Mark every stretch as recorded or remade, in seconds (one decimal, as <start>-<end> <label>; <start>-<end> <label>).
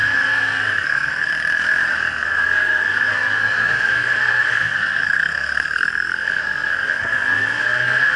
0.0-1.3 remade; 1.3-1.9 recorded; 1.9-8.2 remade